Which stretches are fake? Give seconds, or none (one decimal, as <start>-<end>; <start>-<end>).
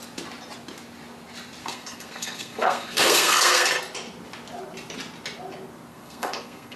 1.6-3.8; 5.9-6.8